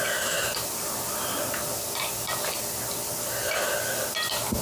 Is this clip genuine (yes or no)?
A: yes